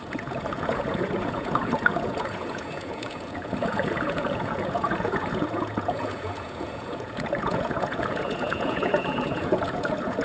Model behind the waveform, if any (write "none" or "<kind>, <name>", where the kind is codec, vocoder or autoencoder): vocoder, Vocos